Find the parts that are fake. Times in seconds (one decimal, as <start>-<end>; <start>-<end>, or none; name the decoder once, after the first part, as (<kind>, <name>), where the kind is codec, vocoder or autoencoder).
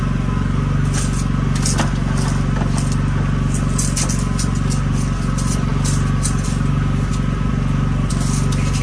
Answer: none